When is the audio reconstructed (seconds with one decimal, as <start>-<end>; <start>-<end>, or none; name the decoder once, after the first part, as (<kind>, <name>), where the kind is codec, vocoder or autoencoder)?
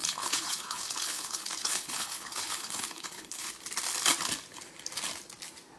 0.0-3.5 (codec, HILCodec)